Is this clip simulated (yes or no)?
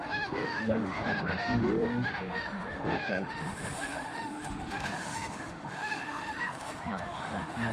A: yes